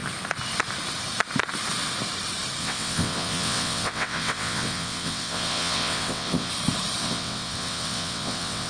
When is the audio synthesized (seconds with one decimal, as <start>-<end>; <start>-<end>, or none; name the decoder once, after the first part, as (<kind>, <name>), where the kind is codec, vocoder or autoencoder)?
2.6-6.5 (vocoder, WaveNeXt); 7.0-8.7